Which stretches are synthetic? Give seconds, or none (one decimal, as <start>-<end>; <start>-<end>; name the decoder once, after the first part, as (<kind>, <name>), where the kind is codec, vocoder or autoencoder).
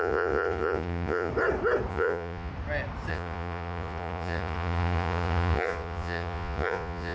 0.0-1.3 (vocoder, Vocos); 1.9-2.5; 3.1-7.1